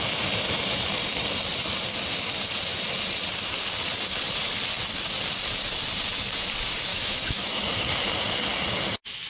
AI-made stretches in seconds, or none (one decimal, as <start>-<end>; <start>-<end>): 6.9-7.6

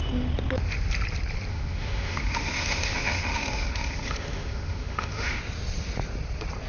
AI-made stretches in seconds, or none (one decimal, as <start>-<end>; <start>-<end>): 1.5-5.4